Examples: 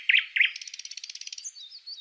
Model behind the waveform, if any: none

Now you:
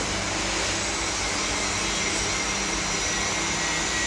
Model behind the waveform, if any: none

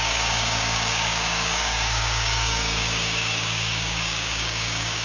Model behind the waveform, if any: codec, DAC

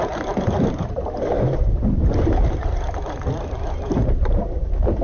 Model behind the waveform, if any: vocoder, BigVGAN v2